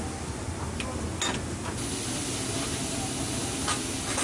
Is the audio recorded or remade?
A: recorded